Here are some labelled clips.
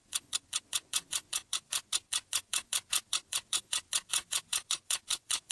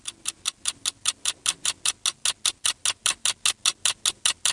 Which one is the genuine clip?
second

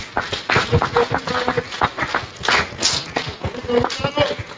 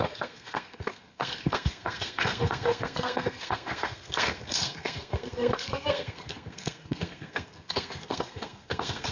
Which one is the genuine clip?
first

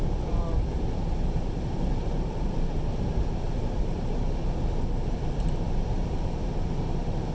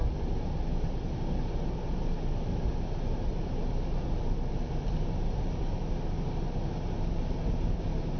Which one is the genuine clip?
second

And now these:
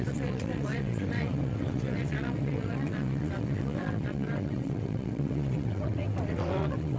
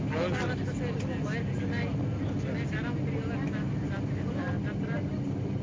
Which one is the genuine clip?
second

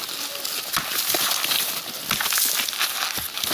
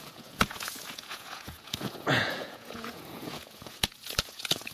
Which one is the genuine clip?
first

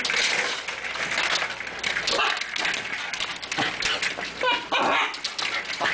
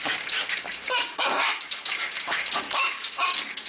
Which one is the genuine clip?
first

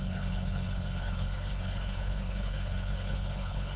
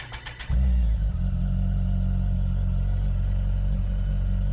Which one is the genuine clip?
second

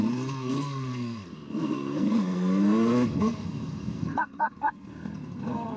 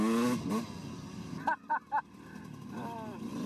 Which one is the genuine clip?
second